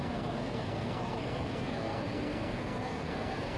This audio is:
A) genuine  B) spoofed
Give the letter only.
B